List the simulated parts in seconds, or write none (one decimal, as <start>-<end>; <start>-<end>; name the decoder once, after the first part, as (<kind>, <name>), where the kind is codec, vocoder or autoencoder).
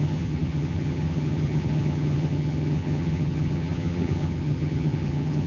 0.0-5.5 (vocoder, HiFi-GAN)